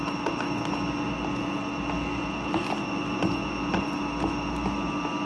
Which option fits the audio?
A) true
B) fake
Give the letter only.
A